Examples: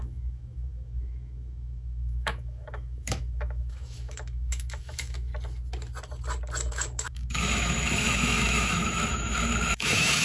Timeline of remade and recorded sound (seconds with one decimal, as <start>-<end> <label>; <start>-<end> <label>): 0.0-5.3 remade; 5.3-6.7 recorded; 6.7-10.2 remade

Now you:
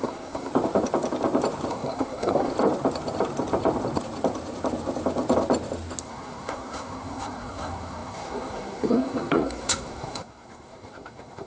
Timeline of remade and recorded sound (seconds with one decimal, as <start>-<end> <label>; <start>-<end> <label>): 0.0-0.5 remade; 0.5-1.7 recorded; 1.7-2.5 remade; 2.5-6.0 recorded; 6.0-11.5 remade

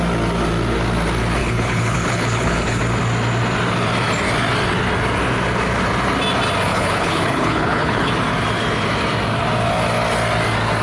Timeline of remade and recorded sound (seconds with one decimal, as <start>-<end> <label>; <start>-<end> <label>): 0.0-1.4 recorded; 1.4-2.8 remade; 2.8-6.7 recorded; 6.7-8.1 remade; 8.1-10.8 recorded

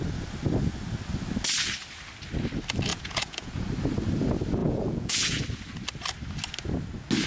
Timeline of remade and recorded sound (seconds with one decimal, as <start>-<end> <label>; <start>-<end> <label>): 0.0-2.9 recorded; 2.9-3.6 remade; 3.6-4.6 recorded; 4.6-5.4 remade; 5.4-7.3 recorded

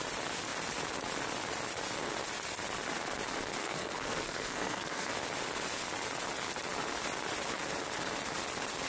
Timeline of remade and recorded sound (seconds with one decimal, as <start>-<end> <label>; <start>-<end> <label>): 0.0-3.6 recorded; 3.6-5.1 remade; 5.1-8.9 recorded

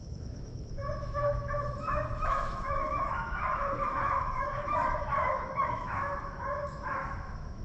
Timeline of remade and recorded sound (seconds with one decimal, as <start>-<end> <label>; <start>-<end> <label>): 0.0-7.6 remade

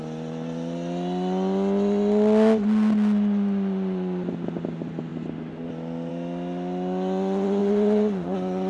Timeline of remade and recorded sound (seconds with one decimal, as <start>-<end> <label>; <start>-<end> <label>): 0.0-7.6 recorded; 7.6-8.7 remade